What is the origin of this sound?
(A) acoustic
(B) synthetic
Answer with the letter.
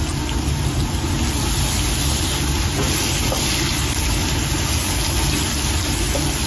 A